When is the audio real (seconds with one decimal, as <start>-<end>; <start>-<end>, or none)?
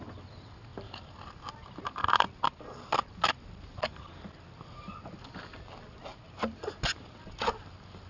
0.0-8.1